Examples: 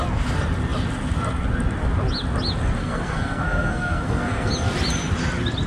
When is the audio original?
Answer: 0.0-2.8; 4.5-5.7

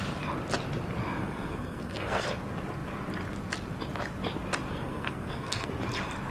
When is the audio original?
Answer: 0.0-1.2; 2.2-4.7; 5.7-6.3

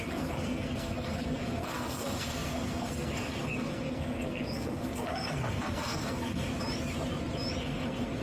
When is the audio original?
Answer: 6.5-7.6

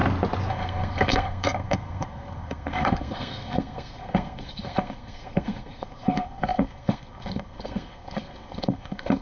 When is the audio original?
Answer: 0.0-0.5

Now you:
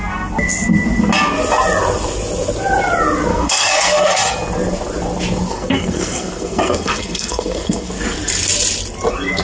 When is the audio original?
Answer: 0.0-3.3; 4.2-5.5; 7.9-9.4

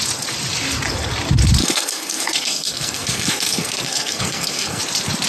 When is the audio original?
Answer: 0.0-1.6; 4.8-5.3